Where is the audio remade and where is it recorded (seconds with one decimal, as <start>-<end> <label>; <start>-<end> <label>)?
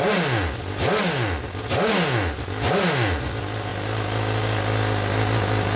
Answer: 0.0-5.8 recorded